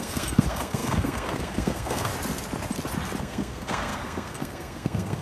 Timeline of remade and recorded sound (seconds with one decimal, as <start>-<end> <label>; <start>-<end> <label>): 0.0-2.1 remade; 2.1-3.2 recorded; 3.2-5.2 remade